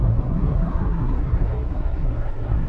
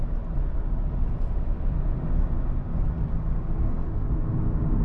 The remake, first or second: first